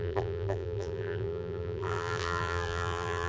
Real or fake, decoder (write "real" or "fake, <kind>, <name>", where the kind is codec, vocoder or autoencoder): fake, vocoder, BigVGAN v2